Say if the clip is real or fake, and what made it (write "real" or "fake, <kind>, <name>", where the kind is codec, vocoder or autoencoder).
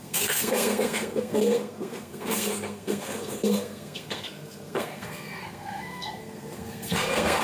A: fake, codec, SNAC